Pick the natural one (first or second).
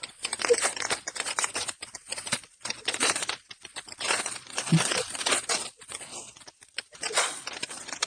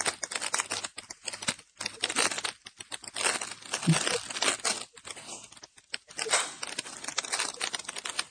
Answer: second